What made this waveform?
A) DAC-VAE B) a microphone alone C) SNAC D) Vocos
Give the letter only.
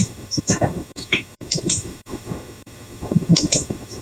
A